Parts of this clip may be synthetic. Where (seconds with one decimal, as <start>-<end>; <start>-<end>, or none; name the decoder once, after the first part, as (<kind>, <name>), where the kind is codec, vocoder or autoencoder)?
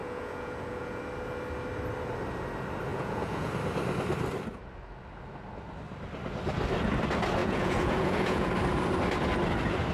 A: 0.0-1.0 (vocoder, Vocos); 2.9-3.5; 7.4-8.5